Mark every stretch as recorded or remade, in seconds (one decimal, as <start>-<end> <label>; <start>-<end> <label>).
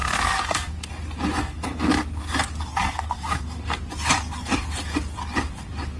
0.0-0.7 remade; 0.7-1.4 recorded; 1.4-1.9 remade; 1.9-2.7 recorded; 2.7-3.8 remade; 3.8-6.0 recorded